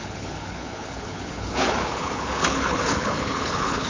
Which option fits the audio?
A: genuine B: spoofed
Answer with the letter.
B